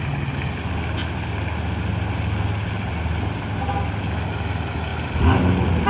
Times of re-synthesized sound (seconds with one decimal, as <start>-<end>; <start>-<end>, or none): none